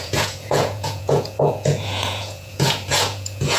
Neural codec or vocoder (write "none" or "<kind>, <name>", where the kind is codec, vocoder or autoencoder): vocoder, Vocos